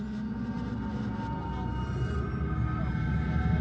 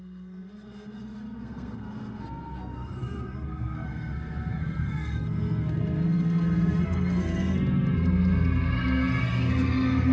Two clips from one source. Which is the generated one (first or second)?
second